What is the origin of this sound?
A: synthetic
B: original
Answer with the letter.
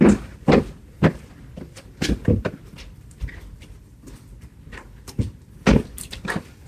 B